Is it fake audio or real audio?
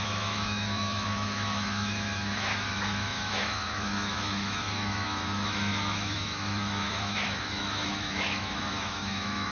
fake